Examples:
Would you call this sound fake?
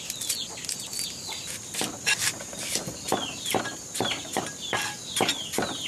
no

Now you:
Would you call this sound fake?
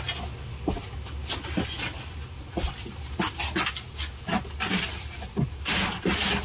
no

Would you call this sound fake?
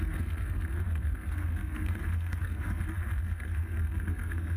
yes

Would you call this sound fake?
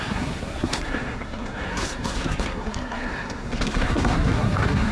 yes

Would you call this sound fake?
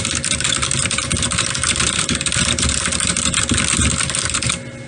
no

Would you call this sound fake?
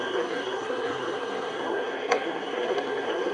yes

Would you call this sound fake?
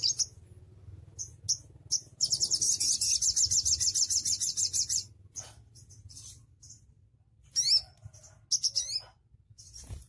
no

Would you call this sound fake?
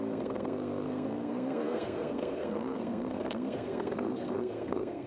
yes